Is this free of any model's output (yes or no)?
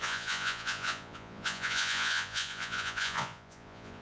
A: no